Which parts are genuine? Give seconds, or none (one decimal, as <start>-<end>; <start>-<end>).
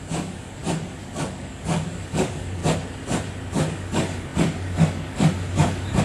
2.6-3.7